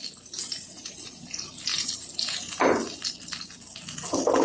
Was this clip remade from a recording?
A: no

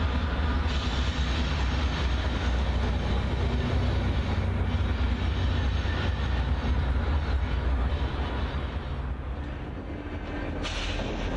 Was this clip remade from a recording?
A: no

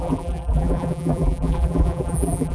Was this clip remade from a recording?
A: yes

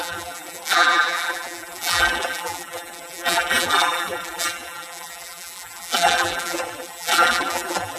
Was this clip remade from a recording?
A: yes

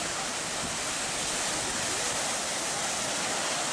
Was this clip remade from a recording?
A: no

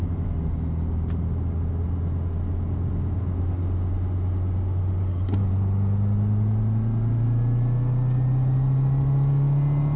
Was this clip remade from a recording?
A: no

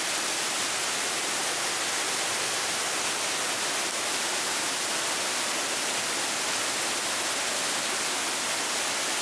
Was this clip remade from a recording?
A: no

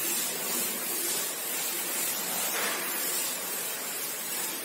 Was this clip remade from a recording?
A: yes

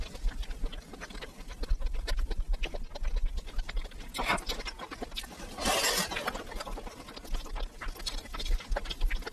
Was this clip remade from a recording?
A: no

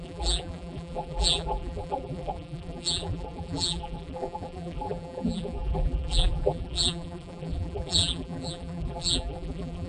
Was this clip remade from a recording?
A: yes